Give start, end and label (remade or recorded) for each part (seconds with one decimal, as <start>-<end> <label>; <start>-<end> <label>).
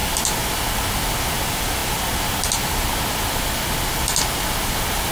0.0-5.1 recorded